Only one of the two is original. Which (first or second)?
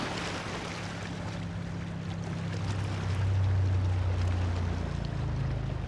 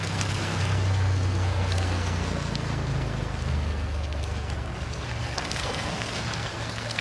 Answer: first